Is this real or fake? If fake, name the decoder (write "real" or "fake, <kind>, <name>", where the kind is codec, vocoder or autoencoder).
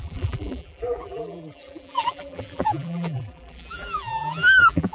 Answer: fake, vocoder, BigVGAN v2